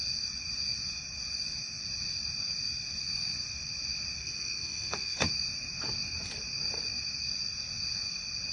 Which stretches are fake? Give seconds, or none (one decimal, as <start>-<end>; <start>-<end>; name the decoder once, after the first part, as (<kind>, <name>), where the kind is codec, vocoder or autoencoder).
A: 4.2-5.3 (codec, SNAC)